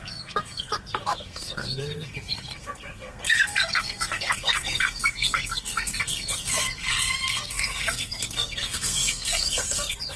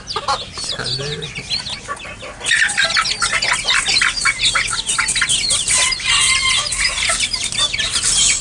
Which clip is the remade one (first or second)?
first